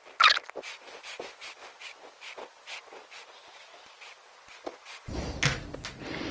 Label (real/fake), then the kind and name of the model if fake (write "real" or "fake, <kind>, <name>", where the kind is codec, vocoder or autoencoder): real